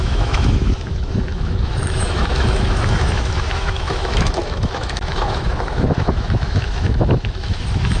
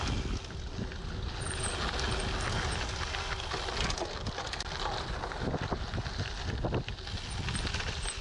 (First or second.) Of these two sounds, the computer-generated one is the first